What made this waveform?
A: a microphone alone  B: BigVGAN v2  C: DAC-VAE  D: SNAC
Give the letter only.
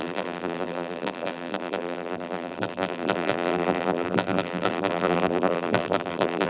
B